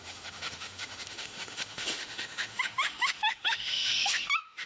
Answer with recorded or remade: remade